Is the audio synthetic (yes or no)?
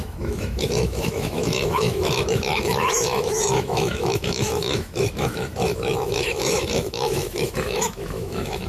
yes